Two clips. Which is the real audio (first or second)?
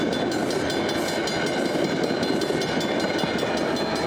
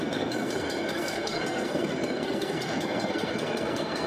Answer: first